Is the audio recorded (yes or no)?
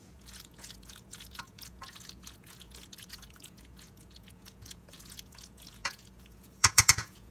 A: no